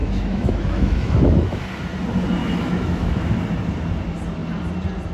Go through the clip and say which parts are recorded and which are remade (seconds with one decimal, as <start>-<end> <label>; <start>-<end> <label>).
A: 0.0-1.6 remade; 1.6-2.4 recorded; 2.4-3.4 remade; 3.4-5.1 recorded